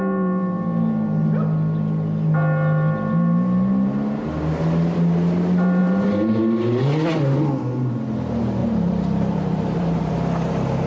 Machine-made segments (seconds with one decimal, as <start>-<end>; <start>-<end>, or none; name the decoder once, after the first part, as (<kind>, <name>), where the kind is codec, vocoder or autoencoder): 5.8-6.4 (vocoder, BigVGAN v2); 8.6-10.1